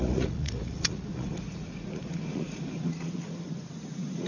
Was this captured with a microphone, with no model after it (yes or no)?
no